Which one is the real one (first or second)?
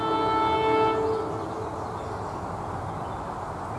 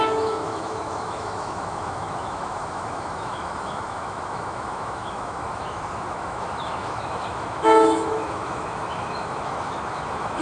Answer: first